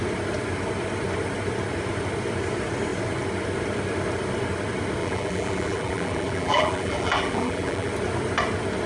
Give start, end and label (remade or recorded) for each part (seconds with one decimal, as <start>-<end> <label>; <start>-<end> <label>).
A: 0.0-5.0 recorded; 5.0-7.9 remade; 7.9-8.9 recorded